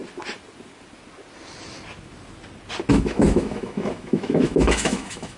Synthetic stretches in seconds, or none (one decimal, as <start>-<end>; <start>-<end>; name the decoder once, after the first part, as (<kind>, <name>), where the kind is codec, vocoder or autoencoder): 2.9-5.4 (autoencoder, DAC-VAE)